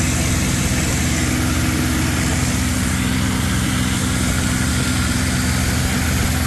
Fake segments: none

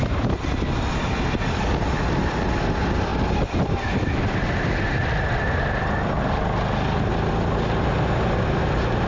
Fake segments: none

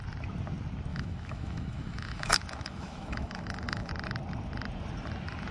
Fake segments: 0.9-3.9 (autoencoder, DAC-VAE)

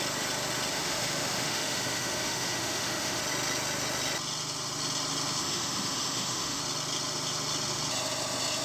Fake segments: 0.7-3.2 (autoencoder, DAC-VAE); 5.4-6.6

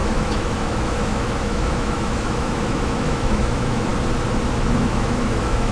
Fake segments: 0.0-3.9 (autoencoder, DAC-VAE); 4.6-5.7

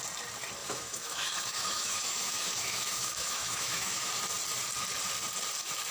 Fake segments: 0.6-4.1 (autoencoder, DAC-VAE)

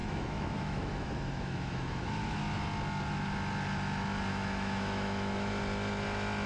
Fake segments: 0.0-2.4 (autoencoder, DAC-VAE); 4.3-5.5